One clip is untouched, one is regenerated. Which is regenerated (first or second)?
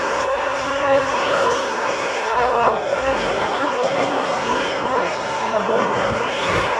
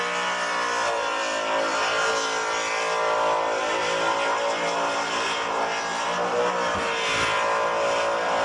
first